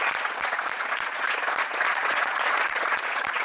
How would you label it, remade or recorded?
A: remade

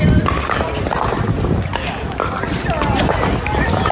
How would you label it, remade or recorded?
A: recorded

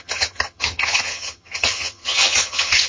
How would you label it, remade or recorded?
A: remade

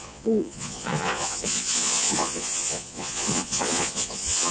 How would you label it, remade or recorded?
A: remade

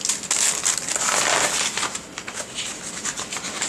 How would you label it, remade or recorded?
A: recorded